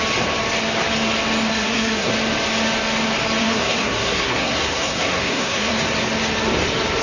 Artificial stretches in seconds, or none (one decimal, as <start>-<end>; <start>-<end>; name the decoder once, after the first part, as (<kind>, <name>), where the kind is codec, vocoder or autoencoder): 1.5-2.1 (codec, SNAC); 3.4-5.7